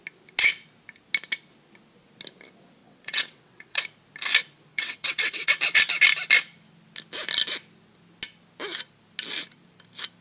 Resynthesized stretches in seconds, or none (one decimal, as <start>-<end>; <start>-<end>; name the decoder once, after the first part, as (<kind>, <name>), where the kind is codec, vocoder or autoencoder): 2.8-3.8 (vocoder, WaveNeXt); 4.7-5.5